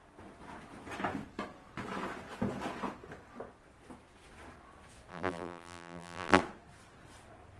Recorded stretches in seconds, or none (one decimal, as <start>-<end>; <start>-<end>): 0.0-5.1; 6.4-7.6